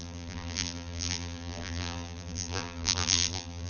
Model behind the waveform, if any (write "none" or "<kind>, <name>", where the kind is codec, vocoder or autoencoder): vocoder, BigVGAN v2